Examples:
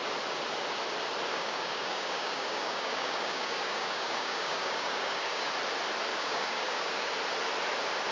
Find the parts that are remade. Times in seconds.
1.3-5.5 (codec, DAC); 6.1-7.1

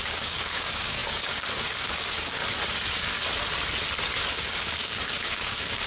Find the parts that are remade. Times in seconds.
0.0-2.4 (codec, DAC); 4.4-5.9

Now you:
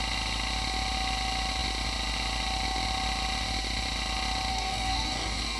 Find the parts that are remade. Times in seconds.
4.5-5.6 (codec, DAC)